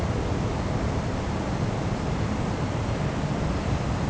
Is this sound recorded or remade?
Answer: recorded